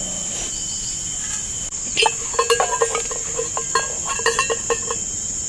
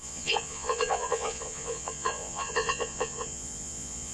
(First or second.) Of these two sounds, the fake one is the second